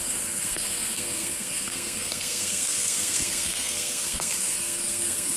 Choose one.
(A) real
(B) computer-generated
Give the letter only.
B